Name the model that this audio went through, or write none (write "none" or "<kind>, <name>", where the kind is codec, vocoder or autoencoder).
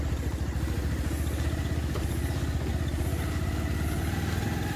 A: none